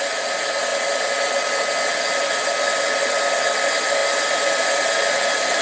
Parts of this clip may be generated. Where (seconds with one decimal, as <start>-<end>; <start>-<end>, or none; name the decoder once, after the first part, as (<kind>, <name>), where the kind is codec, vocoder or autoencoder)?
none